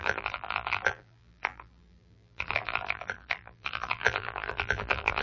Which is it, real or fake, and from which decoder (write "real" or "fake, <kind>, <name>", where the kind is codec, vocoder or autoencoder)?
fake, vocoder, BigVGAN v2